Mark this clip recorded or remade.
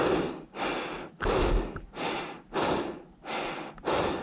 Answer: recorded